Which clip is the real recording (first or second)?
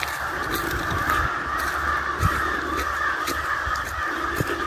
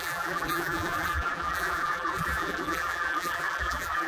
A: first